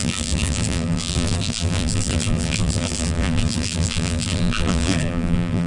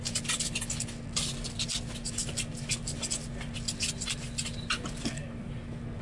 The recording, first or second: second